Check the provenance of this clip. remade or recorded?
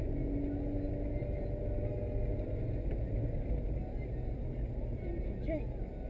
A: recorded